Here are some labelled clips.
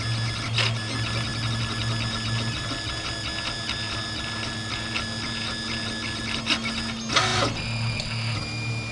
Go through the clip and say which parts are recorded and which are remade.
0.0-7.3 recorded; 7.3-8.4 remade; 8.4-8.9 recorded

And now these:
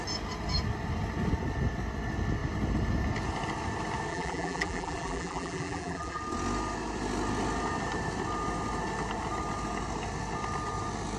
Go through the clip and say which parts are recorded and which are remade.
0.0-4.1 recorded; 4.1-6.2 remade; 6.2-11.2 recorded

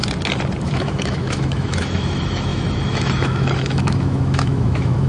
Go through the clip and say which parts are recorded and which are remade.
0.0-0.6 recorded; 0.6-5.1 remade

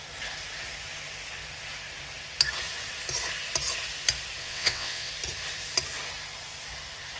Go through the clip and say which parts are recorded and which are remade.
0.0-4.4 recorded; 4.4-5.1 remade; 5.1-7.2 recorded

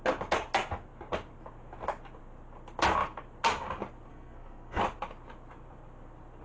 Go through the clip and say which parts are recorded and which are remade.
0.0-4.1 recorded; 4.1-4.8 remade; 4.8-6.4 recorded

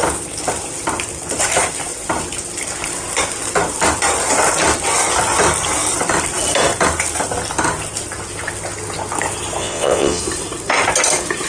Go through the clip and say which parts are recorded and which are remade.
0.0-9.6 recorded; 9.6-10.2 remade; 10.2-11.5 recorded